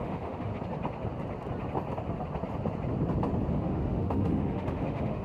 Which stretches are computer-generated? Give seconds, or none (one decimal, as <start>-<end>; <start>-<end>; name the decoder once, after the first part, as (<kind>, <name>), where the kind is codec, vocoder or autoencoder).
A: 0.0-0.5 (autoencoder, DAC-VAE); 3.5-5.2